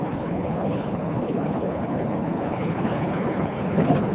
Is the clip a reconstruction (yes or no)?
yes